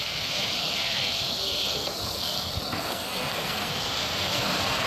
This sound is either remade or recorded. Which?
remade